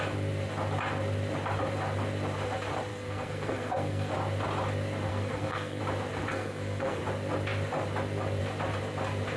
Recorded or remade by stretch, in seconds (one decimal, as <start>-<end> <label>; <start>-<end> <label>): 0.0-2.9 recorded; 2.9-4.1 remade; 4.1-5.1 recorded; 5.1-5.8 remade; 5.8-6.3 recorded; 6.3-7.0 remade; 7.0-9.4 recorded